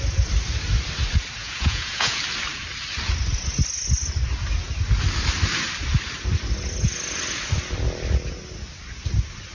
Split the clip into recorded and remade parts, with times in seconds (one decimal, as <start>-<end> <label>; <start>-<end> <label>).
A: 0.0-1.4 recorded; 1.4-2.2 remade; 2.2-9.5 recorded